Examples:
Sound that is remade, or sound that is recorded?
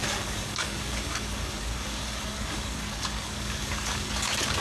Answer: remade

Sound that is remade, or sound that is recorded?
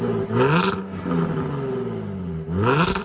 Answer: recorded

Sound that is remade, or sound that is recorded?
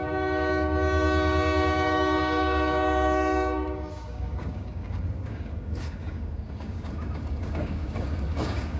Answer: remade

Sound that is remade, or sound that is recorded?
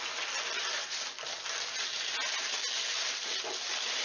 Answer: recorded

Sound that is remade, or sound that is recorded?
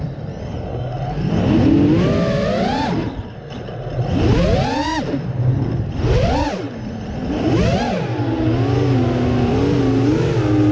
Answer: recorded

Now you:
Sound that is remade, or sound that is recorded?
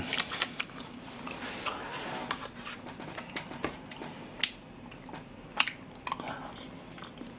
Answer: recorded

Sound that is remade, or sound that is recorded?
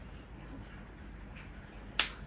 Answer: recorded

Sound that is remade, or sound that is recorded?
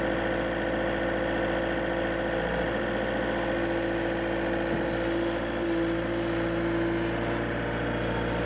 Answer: recorded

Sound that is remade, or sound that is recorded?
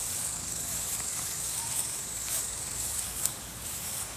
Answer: remade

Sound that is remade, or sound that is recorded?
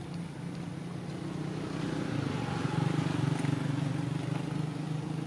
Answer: recorded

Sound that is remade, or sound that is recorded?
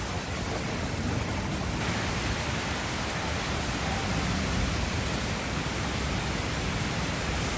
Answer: recorded